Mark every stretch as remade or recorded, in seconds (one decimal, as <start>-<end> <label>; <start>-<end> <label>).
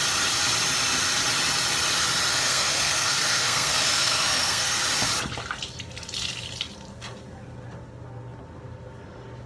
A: 0.0-2.3 recorded; 2.3-4.8 remade; 4.8-9.5 recorded